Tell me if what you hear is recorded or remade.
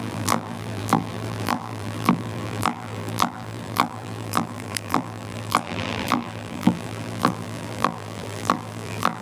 remade